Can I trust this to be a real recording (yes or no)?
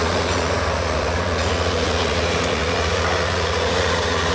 no